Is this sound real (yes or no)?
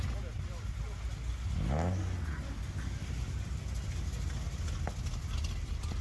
yes